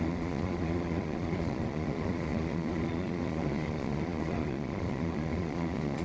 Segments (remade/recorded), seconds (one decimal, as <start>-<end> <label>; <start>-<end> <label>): 0.0-6.0 remade